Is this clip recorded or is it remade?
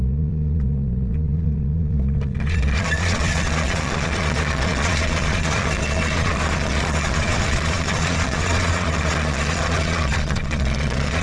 remade